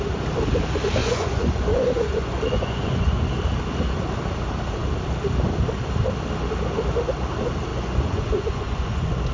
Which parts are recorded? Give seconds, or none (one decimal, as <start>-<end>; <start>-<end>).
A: 0.0-1.0; 3.3-7.7

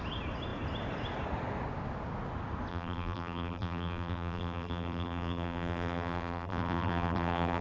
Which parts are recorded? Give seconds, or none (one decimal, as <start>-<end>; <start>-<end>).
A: 0.0-2.7